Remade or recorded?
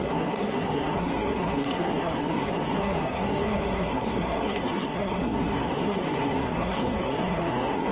remade